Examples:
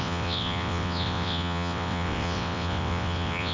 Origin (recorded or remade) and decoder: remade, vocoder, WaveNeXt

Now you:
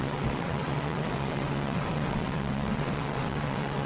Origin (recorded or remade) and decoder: remade, vocoder, WaveNeXt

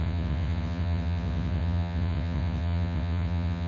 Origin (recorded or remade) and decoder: remade, vocoder, WaveNeXt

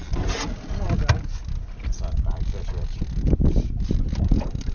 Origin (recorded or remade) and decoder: recorded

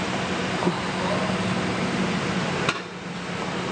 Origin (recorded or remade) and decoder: recorded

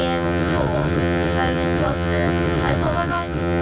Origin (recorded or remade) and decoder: remade, vocoder, WaveNeXt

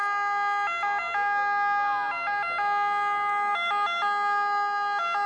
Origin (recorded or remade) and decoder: recorded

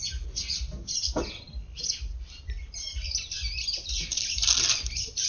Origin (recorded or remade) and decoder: recorded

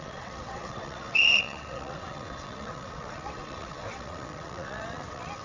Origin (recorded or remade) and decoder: remade, vocoder, WaveNeXt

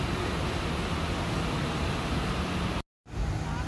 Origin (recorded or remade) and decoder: recorded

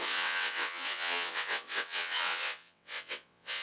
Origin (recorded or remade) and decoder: remade, vocoder, WaveNeXt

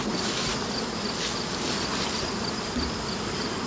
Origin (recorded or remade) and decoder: recorded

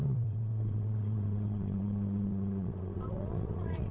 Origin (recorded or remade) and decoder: remade, vocoder, WaveNeXt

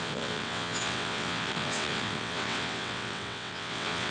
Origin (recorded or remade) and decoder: remade, vocoder, WaveNeXt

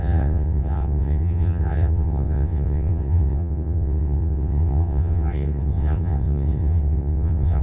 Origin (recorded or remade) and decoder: remade, vocoder, WaveNeXt